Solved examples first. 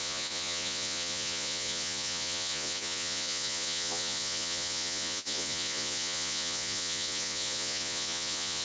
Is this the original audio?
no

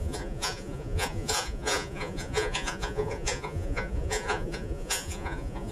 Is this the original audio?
no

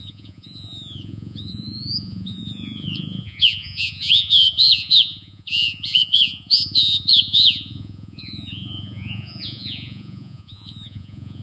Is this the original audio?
no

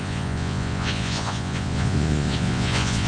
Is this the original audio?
no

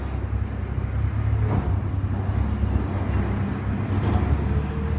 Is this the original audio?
yes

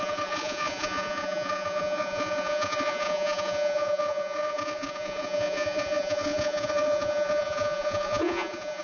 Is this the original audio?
no